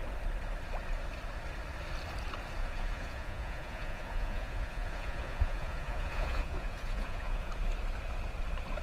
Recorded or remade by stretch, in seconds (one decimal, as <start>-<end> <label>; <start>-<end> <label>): 0.0-2.6 recorded; 2.6-7.5 remade; 7.5-8.8 recorded